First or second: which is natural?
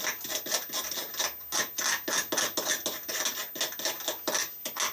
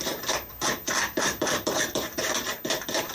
first